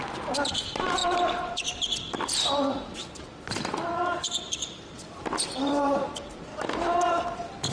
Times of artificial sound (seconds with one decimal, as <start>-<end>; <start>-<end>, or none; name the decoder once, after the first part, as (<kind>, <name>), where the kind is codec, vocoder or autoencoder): 0.0-6.5 (vocoder, BigVGAN v2); 7.2-7.7